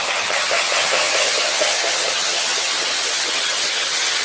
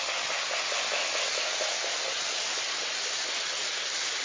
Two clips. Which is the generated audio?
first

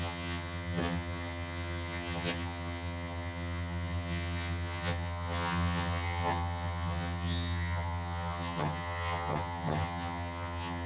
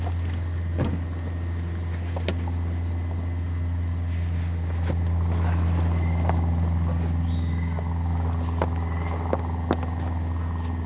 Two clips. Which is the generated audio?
first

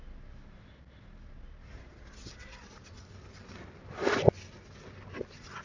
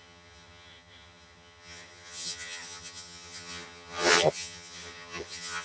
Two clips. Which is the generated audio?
second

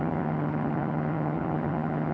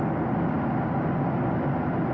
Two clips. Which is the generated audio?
first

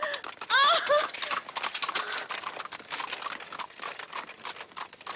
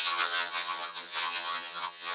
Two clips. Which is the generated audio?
second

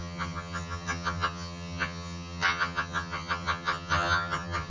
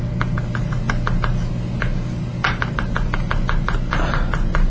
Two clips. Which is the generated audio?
first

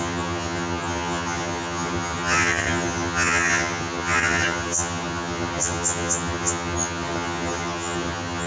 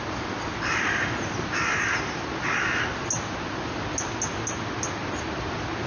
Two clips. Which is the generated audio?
first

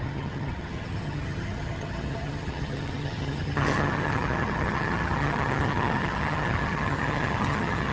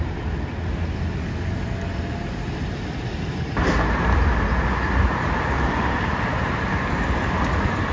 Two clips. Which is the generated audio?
first